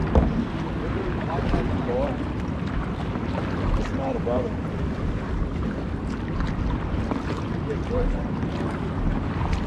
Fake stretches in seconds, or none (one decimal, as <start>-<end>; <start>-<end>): none